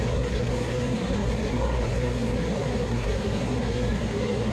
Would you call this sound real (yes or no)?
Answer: no